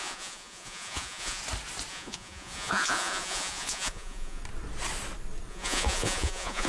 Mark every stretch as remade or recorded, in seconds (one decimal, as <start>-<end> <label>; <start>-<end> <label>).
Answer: 0.0-1.4 remade; 1.4-1.9 recorded; 1.9-4.4 remade; 4.4-5.5 recorded; 5.5-6.7 remade